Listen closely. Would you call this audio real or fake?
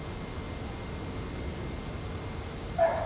real